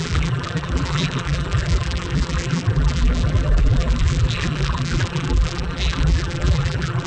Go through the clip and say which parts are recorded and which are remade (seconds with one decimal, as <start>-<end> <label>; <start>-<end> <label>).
0.0-7.1 remade